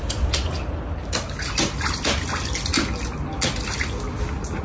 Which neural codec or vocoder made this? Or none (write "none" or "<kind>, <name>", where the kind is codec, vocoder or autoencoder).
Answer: none